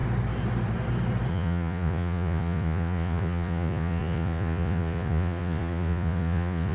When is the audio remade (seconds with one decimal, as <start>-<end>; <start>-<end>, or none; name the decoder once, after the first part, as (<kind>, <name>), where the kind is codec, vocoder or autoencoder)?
1.3-6.7 (vocoder, Vocos)